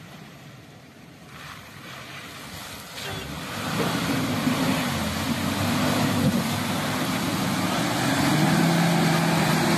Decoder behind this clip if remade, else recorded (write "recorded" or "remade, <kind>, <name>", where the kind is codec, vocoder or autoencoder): recorded